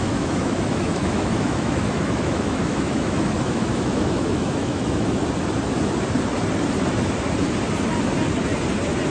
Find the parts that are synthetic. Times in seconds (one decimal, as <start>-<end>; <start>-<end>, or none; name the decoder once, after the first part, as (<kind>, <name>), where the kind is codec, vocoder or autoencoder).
0.0-5.2 (autoencoder, DAC-VAE)